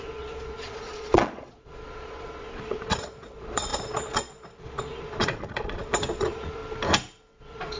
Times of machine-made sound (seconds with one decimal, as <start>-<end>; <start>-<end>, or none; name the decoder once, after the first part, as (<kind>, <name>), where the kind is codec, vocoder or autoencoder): 0.0-6.6 (vocoder, Vocos); 7.3-7.8